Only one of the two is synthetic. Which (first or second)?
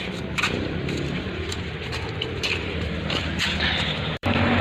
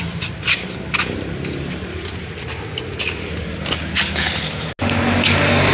first